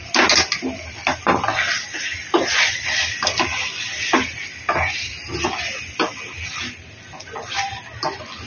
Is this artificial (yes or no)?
no